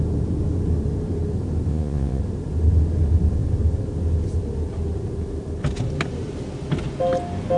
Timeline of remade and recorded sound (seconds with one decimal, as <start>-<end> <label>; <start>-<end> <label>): 0.0-1.7 recorded; 1.7-2.2 remade; 2.2-7.6 recorded